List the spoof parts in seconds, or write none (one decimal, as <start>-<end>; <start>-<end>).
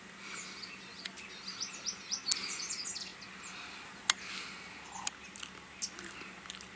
none